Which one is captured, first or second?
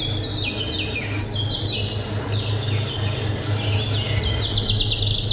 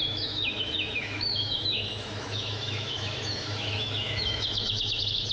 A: first